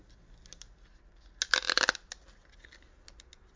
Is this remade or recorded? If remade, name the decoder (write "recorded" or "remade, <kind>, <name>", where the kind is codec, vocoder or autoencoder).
recorded